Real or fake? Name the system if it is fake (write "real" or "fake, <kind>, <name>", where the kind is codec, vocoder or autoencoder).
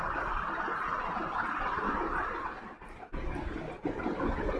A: real